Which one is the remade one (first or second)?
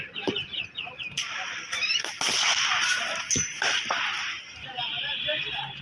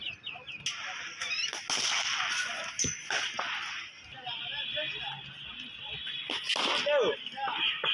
first